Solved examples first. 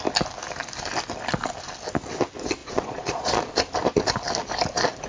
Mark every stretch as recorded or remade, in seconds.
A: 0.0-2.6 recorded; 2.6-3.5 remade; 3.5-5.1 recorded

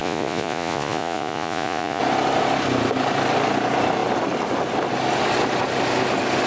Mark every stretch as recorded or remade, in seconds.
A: 0.0-2.0 remade; 2.0-6.5 recorded